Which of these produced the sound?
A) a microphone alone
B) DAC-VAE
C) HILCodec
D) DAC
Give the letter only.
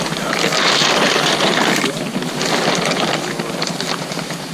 A